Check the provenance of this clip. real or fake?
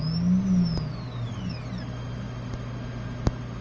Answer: real